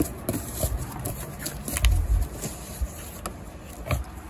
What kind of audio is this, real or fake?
real